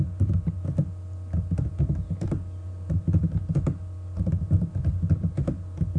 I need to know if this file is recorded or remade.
recorded